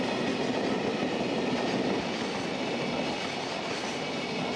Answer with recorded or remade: recorded